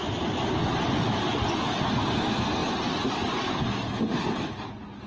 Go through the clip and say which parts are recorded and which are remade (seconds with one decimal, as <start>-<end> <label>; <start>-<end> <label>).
0.0-5.1 recorded